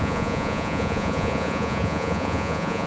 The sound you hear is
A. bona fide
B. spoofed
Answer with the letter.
B